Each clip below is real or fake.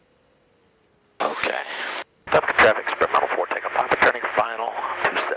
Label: real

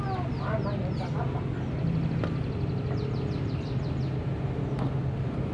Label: real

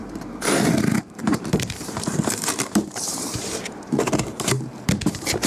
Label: fake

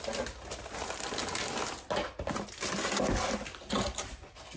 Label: real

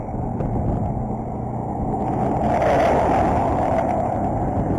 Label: real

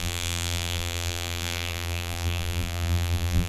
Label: fake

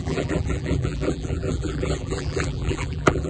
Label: fake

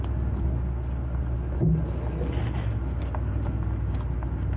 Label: real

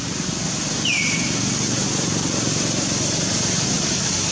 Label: fake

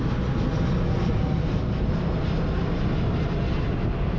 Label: real